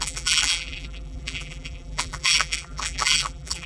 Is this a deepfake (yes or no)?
yes